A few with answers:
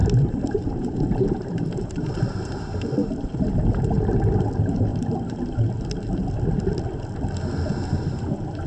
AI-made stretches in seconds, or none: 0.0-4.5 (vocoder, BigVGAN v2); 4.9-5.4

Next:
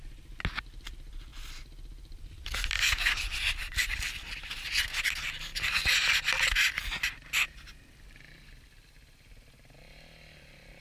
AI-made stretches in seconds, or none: none